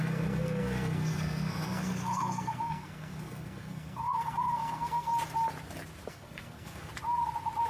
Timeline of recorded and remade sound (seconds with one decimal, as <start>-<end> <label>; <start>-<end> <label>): 0.0-5.1 remade; 5.1-6.1 recorded; 6.1-6.9 remade; 6.9-7.7 recorded